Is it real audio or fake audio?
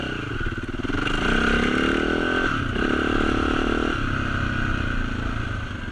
real